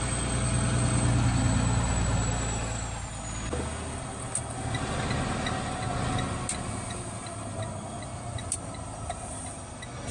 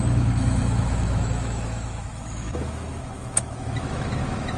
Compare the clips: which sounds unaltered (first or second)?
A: first